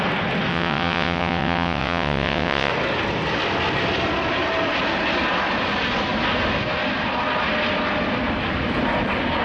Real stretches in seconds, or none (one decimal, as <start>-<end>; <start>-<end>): 0.0-0.5; 2.7-9.4

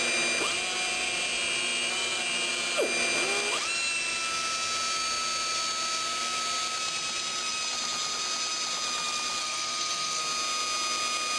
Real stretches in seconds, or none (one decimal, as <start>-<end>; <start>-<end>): 0.0-9.4; 10.2-11.4